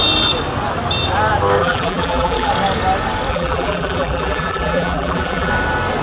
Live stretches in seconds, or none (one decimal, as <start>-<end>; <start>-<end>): 0.0-1.6; 2.5-3.3; 5.5-6.0

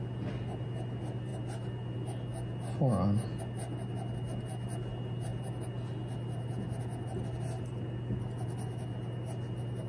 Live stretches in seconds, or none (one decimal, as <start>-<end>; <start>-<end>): 0.0-9.9

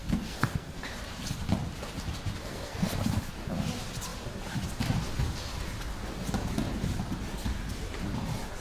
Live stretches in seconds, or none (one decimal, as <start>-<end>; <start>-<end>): 0.9-2.4; 3.0-8.6